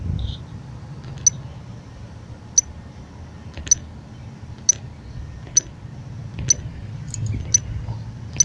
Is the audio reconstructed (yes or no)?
no